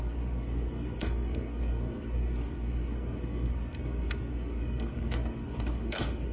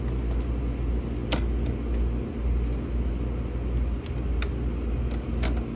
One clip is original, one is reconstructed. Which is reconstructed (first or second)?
first